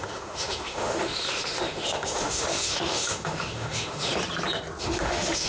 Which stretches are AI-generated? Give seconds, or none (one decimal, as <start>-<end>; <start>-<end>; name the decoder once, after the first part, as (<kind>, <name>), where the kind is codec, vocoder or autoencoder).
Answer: 0.0-4.1 (autoencoder, DAC-VAE); 4.8-5.5